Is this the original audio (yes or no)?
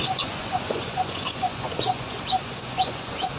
no